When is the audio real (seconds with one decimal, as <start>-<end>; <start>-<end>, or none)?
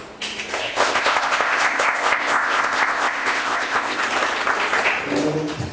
0.0-0.6; 4.0-5.7